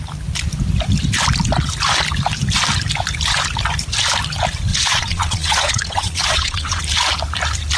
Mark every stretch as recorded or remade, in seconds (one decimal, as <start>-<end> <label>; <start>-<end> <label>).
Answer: 0.0-4.7 recorded; 4.7-6.8 remade; 6.8-7.8 recorded